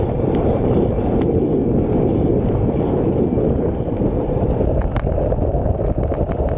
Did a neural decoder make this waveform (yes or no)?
no